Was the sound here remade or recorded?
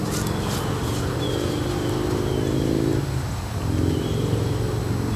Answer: recorded